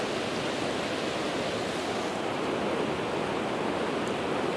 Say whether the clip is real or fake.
real